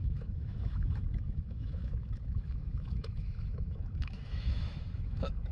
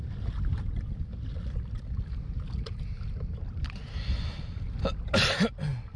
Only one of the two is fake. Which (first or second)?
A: first